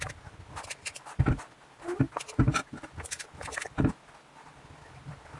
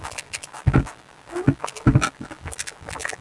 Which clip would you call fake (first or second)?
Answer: second